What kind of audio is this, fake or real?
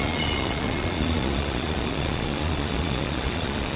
fake